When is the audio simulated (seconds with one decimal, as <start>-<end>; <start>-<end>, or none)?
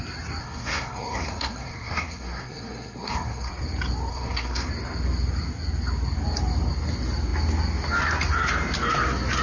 0.4-3.5; 4.1-4.7